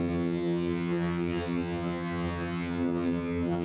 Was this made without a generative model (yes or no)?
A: no